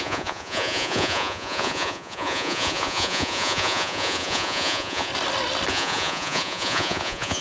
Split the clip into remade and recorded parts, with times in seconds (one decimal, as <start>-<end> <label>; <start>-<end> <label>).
0.0-5.1 remade; 5.1-5.7 recorded; 5.7-7.4 remade